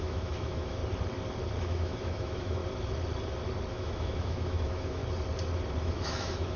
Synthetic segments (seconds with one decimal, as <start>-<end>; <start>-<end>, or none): 0.0-0.8; 1.6-2.6; 3.7-5.0; 5.8-6.6